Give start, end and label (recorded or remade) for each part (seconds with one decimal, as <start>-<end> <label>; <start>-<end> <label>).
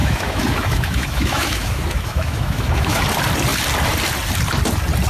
0.0-3.0 remade; 3.0-5.1 recorded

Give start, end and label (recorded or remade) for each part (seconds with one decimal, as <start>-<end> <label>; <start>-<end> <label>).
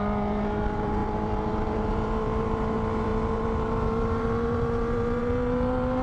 0.0-6.0 remade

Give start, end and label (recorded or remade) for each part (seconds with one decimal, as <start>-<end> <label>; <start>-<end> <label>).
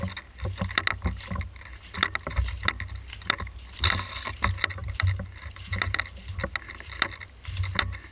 0.0-4.8 recorded; 4.8-6.0 remade; 6.0-8.1 recorded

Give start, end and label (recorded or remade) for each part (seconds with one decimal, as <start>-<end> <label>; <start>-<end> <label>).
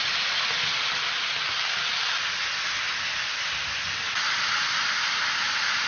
0.0-5.9 recorded